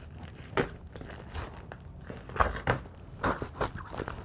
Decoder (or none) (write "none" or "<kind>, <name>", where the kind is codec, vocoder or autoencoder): none